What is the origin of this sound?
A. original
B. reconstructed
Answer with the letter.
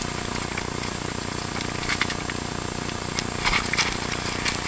A